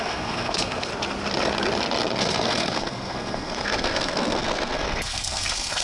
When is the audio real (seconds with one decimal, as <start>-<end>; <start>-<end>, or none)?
0.9-2.2